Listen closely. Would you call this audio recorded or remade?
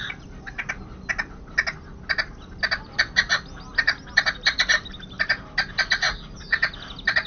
recorded